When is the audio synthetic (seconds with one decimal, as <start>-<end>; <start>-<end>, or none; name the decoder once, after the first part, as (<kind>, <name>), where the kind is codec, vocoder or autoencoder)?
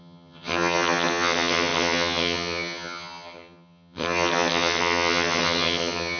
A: 0.0-6.2 (vocoder, HiFi-GAN)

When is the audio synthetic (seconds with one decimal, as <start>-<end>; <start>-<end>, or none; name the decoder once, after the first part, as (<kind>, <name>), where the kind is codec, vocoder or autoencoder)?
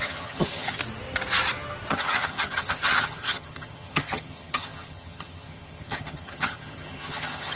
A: 0.0-0.8 (vocoder, HiFi-GAN); 1.9-7.6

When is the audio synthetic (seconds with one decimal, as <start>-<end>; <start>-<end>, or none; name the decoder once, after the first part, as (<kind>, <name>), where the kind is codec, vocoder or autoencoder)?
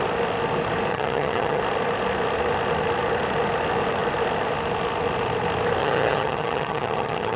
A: 0.9-1.6 (vocoder, HiFi-GAN); 5.8-7.4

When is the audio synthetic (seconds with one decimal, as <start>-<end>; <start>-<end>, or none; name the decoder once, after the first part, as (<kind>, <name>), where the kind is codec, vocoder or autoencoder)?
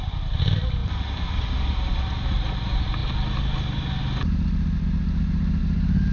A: none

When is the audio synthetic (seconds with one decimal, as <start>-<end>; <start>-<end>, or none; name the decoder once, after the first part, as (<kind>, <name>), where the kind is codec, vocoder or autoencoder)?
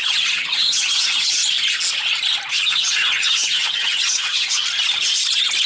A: 0.0-1.4 (vocoder, HiFi-GAN); 2.5-4.6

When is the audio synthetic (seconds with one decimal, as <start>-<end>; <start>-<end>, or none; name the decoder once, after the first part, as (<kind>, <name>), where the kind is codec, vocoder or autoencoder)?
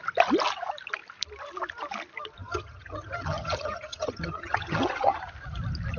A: 2.4-5.2 (vocoder, HiFi-GAN)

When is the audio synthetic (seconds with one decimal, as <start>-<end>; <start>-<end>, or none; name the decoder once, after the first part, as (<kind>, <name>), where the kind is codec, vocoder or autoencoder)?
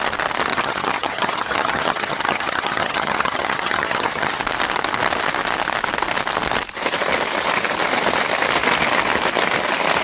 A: 0.5-4.4 (vocoder, HiFi-GAN)